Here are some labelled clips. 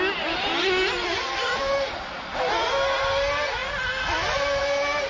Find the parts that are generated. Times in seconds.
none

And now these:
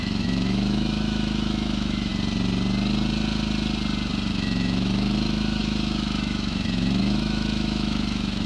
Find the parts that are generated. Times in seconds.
0.0-2.1 (autoencoder, DAC-VAE); 4.3-8.5